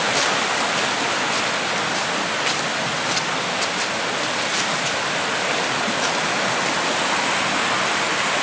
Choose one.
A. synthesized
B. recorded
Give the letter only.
B